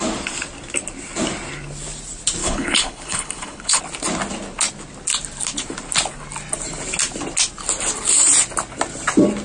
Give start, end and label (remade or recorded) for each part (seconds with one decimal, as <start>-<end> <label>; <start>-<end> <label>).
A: 0.0-2.4 recorded; 2.4-3.8 remade; 3.8-9.4 recorded